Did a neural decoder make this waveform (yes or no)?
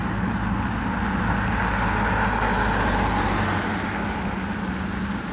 no